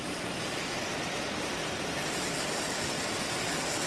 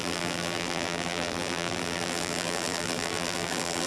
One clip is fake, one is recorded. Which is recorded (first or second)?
first